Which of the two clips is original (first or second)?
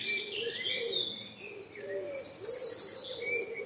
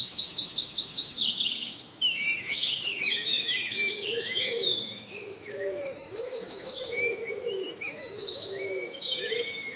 first